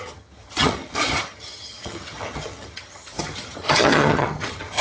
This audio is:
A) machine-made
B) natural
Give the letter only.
A